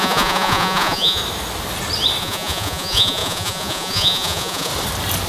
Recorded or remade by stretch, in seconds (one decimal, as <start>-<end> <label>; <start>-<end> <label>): 0.0-1.2 remade; 1.2-2.2 recorded; 2.2-4.7 remade; 4.7-5.3 recorded